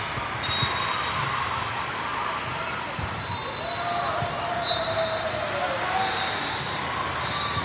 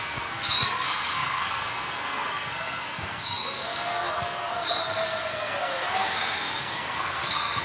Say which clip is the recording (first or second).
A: first